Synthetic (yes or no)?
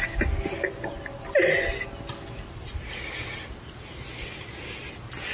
no